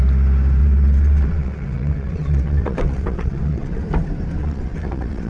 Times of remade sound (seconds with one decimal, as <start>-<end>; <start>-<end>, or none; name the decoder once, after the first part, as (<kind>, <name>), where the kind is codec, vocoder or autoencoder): 0.6-3.8 (vocoder, WaveNeXt); 4.4-5.3